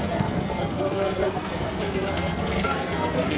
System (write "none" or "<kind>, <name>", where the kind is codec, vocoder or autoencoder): codec, SNAC